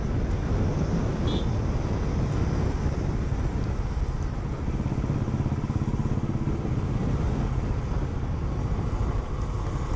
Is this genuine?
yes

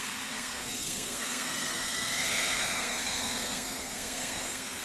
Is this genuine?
no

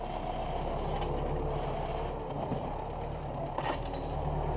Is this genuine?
yes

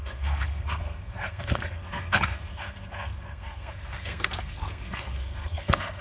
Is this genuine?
no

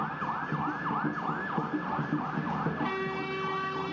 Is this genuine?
yes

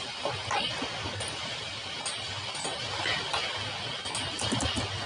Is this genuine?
yes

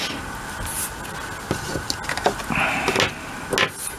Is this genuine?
yes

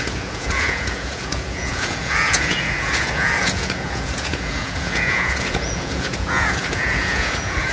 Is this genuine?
no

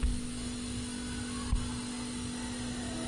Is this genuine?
yes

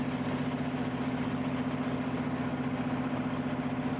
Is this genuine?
yes